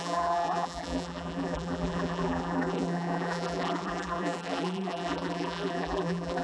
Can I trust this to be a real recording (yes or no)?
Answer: no